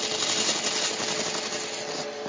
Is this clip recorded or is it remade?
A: recorded